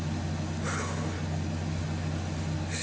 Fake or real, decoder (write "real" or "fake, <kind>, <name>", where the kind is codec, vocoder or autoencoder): real